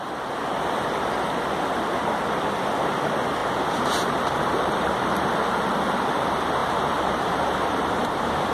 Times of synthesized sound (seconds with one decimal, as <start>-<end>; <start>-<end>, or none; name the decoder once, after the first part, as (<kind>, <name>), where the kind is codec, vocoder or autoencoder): 3.4-5.3 (vocoder, BigVGAN v2); 6.6-8.5